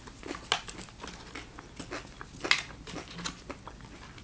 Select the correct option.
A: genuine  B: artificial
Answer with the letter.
A